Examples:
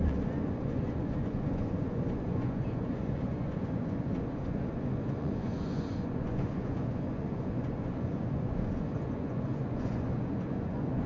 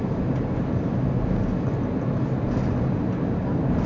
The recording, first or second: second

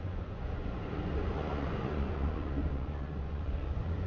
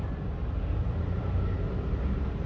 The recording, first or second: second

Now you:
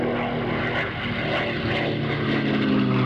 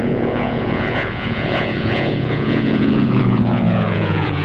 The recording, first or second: first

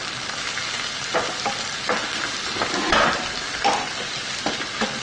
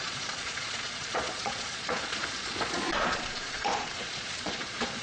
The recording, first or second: first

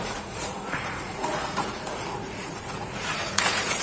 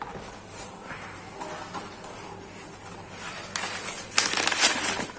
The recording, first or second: second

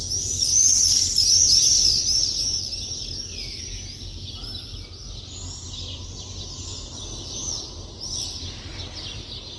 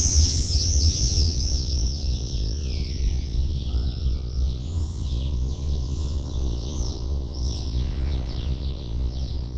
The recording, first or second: first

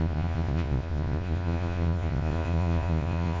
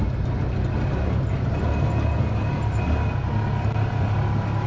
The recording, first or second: second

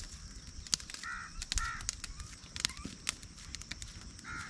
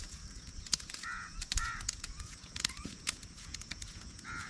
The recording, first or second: first